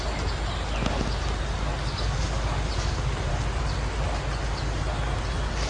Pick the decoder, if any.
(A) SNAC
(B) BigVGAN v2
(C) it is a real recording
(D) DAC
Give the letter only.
C